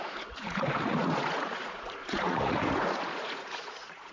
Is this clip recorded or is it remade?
remade